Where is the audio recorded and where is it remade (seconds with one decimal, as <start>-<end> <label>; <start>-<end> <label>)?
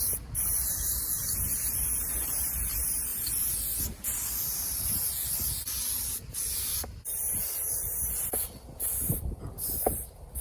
0.0-6.7 recorded; 6.7-9.4 remade; 9.4-10.4 recorded